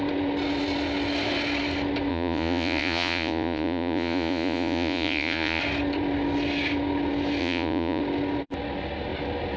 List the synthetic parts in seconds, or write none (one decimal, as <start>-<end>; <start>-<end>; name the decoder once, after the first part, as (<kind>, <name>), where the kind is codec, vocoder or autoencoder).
2.1-5.6 (vocoder, Vocos); 7.4-8.0